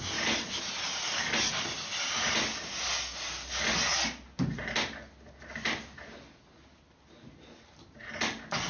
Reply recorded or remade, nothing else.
recorded